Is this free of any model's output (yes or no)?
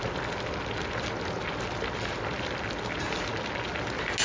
yes